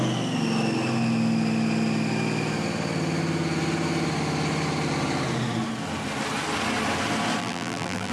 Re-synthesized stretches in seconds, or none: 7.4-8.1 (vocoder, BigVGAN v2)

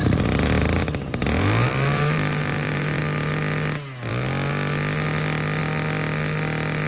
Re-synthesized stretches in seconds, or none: 0.0-3.0 (vocoder, BigVGAN v2)

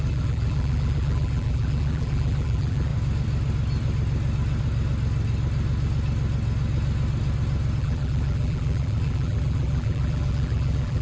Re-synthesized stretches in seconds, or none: 0.0-2.9 (vocoder, BigVGAN v2); 7.8-11.0